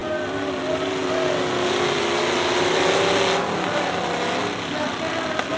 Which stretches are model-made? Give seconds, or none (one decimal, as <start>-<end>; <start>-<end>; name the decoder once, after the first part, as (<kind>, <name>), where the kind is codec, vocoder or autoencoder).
none